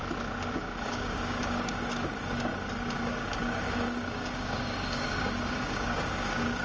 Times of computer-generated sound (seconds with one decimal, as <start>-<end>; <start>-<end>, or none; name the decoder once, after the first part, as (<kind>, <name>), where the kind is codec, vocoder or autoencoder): 0.5-2.5 (codec, DAC); 3.0-6.6